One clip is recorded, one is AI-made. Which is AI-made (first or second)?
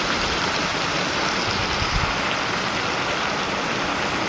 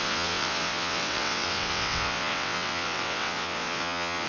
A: second